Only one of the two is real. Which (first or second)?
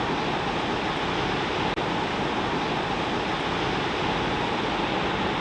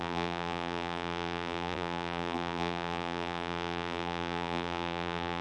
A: first